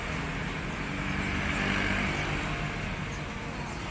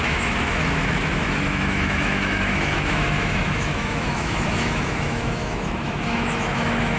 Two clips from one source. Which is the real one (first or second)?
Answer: first